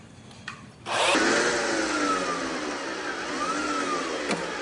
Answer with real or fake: real